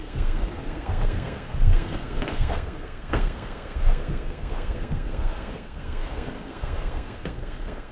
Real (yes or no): no